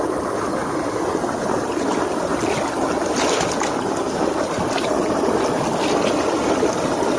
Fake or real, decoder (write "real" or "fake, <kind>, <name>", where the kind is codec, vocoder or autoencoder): real